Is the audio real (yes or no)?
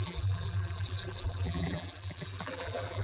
no